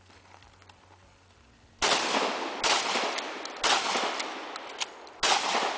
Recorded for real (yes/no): yes